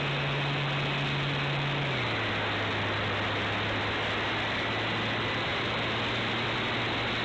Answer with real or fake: real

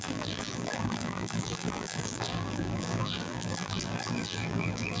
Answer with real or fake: fake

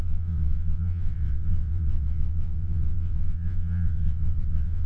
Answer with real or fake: fake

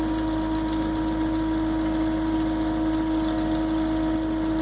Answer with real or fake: real